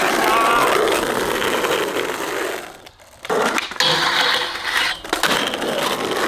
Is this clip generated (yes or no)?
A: no